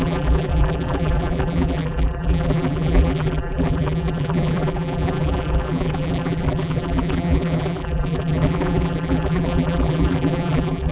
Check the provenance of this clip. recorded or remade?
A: remade